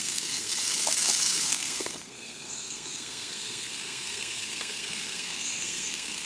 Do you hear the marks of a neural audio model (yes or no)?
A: yes